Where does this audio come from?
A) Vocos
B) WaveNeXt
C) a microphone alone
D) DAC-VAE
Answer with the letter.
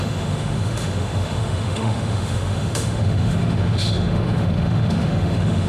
D